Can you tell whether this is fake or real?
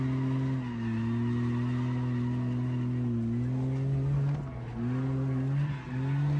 real